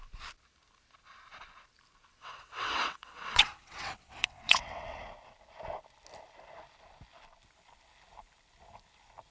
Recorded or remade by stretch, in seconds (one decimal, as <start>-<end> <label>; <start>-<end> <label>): 0.0-2.1 recorded; 2.1-5.0 remade; 5.0-9.3 recorded